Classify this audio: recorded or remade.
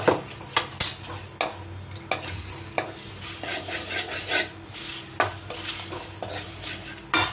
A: recorded